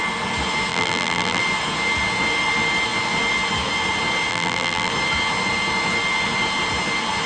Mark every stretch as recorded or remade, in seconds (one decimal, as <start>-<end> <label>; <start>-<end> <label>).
0.0-0.7 recorded; 0.7-1.4 remade; 1.4-4.3 recorded; 4.3-4.9 remade; 4.9-7.3 recorded